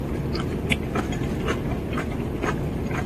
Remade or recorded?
recorded